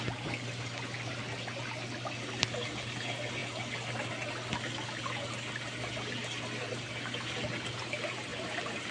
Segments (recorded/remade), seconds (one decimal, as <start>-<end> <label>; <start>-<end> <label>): 0.0-8.9 recorded